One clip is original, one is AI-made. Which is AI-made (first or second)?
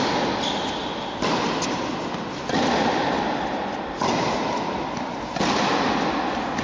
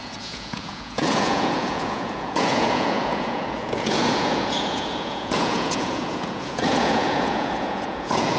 second